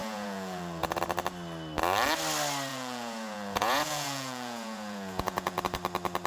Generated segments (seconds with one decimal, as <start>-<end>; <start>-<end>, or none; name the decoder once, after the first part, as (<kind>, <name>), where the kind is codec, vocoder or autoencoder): 0.0-1.0 (vocoder, Vocos); 2.7-5.6